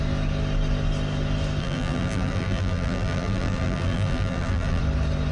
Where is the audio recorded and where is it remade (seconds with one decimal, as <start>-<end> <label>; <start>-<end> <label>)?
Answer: 0.0-1.6 recorded; 1.6-4.8 remade; 4.8-5.3 recorded